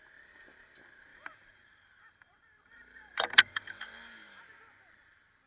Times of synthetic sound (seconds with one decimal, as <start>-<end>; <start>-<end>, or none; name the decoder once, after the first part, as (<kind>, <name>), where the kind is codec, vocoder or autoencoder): 1.1-4.4 (vocoder, BigVGAN v2)